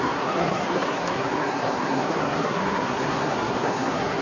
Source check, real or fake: fake